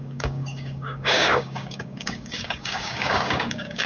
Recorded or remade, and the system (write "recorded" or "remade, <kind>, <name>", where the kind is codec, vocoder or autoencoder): remade, codec, DAC